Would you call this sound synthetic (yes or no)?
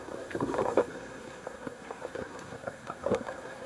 yes